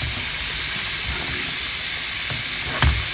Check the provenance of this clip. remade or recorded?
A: recorded